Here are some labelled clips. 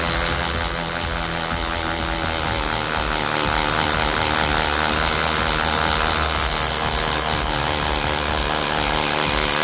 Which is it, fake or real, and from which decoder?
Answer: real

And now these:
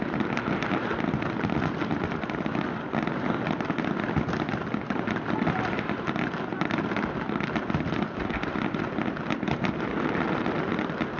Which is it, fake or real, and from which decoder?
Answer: real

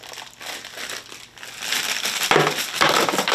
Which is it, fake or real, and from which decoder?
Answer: real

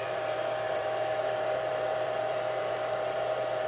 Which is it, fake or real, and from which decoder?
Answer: fake, vocoder, BigVGAN v2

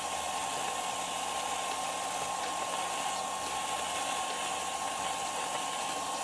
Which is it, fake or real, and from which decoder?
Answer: real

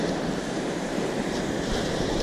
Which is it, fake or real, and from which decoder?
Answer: fake, vocoder, BigVGAN v2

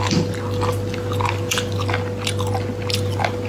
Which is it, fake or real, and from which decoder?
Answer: real